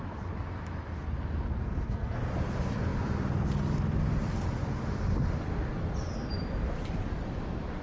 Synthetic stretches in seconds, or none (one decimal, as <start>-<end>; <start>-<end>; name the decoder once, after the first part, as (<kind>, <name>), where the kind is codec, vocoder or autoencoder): 1.6-2.2 (codec, SNAC)

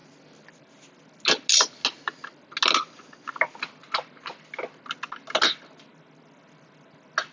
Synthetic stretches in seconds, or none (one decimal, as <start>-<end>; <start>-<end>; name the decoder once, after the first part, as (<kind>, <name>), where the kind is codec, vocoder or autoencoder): none

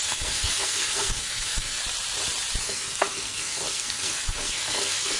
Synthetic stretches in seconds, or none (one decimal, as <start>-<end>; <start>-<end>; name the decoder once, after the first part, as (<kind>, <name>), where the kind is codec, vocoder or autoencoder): 0.0-1.8 (codec, SNAC); 2.6-5.2

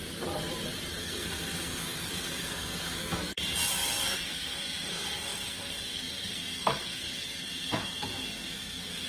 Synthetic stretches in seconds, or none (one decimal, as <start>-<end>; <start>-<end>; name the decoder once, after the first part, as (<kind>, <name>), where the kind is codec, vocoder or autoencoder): 1.0-3.4 (codec, SNAC); 4.0-9.1

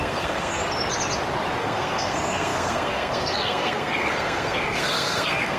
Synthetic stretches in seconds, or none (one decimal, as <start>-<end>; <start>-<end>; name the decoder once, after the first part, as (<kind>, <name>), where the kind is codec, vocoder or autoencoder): 0.0-0.6 (codec, SNAC); 1.6-5.6

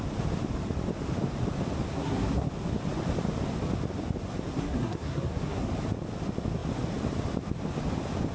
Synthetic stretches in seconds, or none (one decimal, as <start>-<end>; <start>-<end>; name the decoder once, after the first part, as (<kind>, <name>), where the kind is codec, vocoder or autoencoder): 1.9-2.5 (codec, SNAC); 4.5-5.7